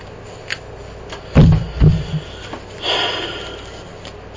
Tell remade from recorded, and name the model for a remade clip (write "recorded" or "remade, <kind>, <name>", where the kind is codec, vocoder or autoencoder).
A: recorded